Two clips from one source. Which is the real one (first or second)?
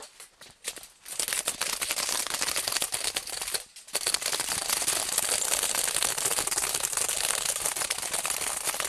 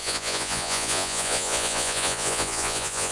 first